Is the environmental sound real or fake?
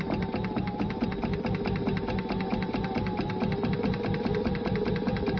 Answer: real